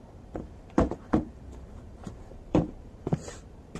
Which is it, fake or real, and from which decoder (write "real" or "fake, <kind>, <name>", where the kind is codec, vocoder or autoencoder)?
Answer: fake, vocoder, BigVGAN v2